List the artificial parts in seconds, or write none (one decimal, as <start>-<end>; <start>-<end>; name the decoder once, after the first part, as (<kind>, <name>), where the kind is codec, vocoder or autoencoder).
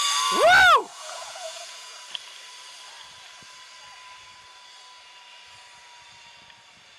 0.9-2.1 (vocoder, Vocos)